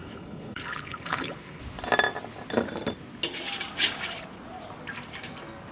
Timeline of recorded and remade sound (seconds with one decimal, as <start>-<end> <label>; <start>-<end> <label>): 0.0-1.6 remade; 1.6-5.7 recorded